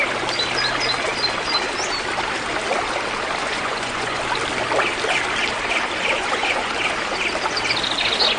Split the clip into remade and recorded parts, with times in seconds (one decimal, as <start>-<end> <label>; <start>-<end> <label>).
0.0-3.4 recorded; 3.4-4.2 remade; 4.2-6.2 recorded; 6.2-6.7 remade; 6.7-8.4 recorded